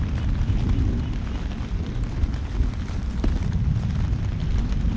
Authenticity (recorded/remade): recorded